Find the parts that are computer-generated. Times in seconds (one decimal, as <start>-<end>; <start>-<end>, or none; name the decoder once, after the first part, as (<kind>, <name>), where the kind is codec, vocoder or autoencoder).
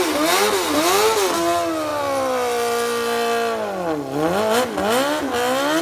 none